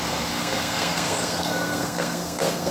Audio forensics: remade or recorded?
remade